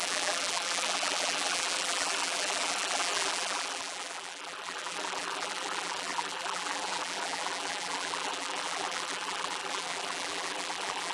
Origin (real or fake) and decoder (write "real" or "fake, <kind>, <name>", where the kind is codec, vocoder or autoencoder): fake, vocoder, BigVGAN v2